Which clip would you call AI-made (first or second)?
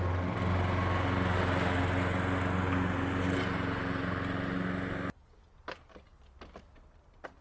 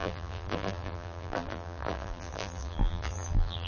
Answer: second